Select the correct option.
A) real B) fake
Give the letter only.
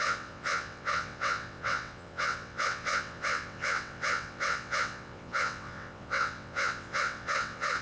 B